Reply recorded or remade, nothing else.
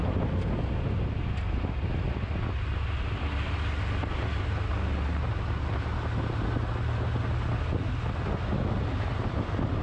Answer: recorded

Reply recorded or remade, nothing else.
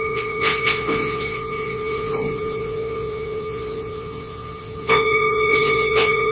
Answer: remade